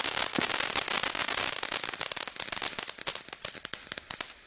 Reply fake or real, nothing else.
real